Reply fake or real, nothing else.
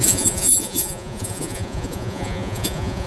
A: fake